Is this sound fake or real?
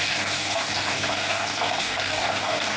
fake